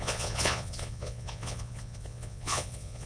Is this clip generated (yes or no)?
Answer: yes